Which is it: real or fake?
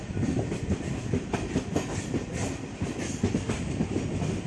fake